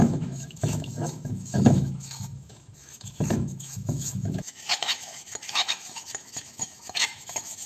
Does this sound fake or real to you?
fake